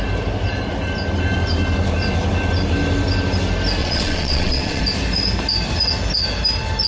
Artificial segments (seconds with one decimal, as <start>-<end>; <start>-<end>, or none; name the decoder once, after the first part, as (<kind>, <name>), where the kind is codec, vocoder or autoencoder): 3.8-4.8 (vocoder, WaveNeXt)